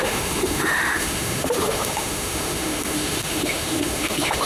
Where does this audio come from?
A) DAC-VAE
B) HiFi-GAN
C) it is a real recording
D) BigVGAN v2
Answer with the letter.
A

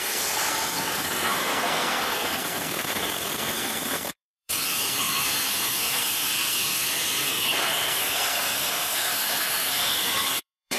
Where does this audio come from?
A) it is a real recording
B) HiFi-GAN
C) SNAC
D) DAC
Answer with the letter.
C